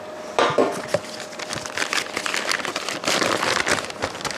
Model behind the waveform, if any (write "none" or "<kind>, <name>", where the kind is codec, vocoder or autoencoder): none